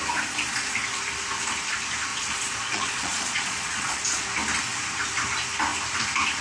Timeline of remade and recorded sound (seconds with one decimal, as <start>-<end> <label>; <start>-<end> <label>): 0.0-2.1 recorded; 2.1-4.2 remade; 4.2-6.4 recorded